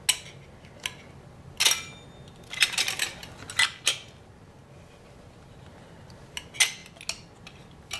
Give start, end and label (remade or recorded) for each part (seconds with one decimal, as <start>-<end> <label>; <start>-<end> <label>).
0.0-8.0 recorded